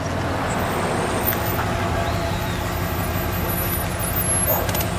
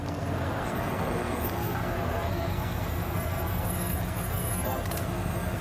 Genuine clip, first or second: first